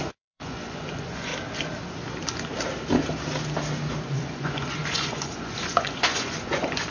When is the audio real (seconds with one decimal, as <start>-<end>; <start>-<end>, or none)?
1.3-4.1